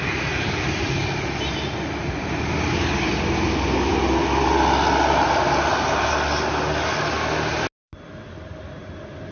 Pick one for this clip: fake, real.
real